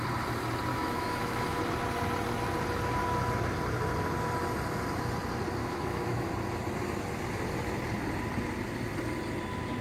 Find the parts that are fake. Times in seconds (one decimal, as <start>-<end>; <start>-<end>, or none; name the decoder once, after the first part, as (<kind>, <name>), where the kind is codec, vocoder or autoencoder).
0.7-1.6 (autoencoder, DAC-VAE); 5.6-6.3